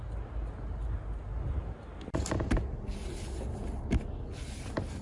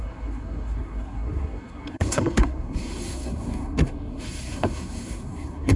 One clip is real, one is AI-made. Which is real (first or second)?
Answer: first